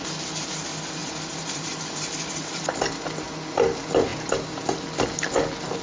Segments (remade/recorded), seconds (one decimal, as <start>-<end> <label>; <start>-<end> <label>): 0.0-1.0 recorded; 1.0-2.7 remade; 2.7-5.8 recorded